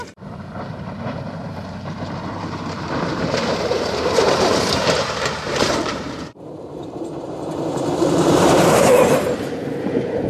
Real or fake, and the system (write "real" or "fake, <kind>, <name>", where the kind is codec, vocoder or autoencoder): fake, vocoder, BigVGAN v2